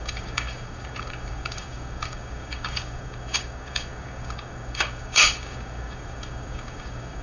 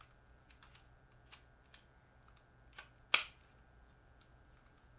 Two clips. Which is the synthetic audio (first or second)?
first